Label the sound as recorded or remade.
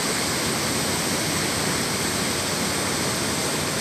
recorded